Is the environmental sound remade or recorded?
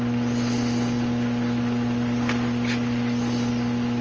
recorded